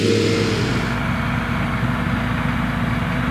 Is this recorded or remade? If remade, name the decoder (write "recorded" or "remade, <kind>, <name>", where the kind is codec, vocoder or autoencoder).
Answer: recorded